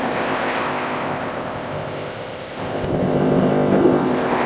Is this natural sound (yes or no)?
no